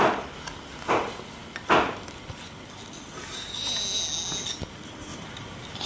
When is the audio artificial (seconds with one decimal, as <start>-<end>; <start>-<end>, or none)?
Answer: 5.1-5.9

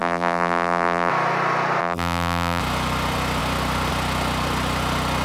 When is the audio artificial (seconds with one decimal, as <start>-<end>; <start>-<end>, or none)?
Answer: 0.0-1.1; 1.8-2.6

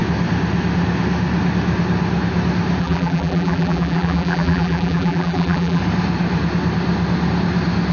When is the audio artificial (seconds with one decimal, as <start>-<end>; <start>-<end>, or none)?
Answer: 2.8-5.8

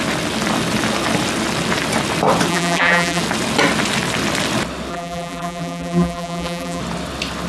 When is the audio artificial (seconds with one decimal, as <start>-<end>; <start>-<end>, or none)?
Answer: 2.5-3.2; 4.9-6.8

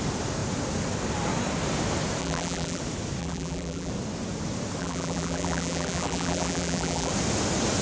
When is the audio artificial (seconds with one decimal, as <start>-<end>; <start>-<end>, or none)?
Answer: 2.2-2.8; 3.2-3.9; 4.8-7.1

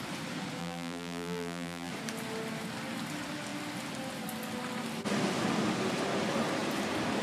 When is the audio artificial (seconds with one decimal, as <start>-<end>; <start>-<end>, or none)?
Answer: 0.6-1.9

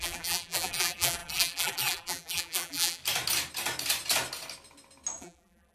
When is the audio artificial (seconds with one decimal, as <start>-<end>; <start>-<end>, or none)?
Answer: 0.0-3.0; 5.2-5.7